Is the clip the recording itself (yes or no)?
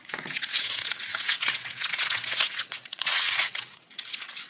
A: no